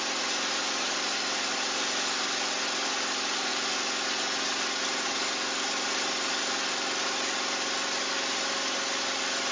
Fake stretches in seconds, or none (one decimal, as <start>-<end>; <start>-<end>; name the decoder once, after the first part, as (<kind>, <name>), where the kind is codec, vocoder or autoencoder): none